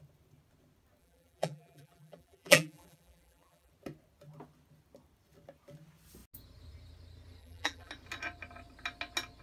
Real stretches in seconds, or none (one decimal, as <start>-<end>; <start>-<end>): 0.0-1.0; 3.7-7.4; 7.9-9.4